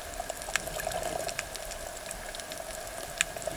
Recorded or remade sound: recorded